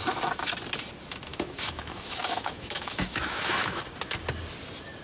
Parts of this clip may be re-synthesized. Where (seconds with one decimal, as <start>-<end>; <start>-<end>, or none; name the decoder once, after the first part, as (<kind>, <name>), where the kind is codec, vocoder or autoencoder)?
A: 1.3-3.8 (autoencoder, DAC-VAE)